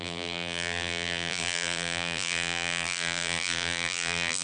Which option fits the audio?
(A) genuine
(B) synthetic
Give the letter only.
B